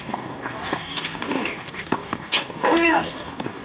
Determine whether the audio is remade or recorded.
remade